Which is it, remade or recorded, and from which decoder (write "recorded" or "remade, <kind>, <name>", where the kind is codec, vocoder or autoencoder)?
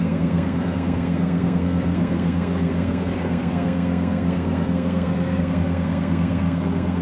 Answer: remade, codec, SNAC